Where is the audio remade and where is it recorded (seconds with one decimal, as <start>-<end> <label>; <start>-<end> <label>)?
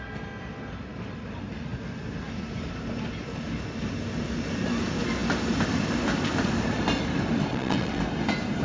0.0-7.5 recorded; 7.5-8.0 remade; 8.0-8.6 recorded